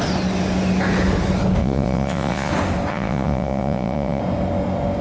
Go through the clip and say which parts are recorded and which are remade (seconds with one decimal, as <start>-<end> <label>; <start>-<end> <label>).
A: 0.0-1.6 recorded; 1.6-2.5 remade; 2.5-2.9 recorded; 2.9-4.2 remade; 4.2-5.0 recorded